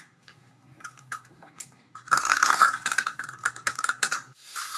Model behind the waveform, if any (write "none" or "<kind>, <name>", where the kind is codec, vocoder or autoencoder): codec, SNAC